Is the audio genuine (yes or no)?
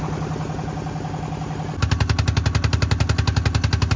yes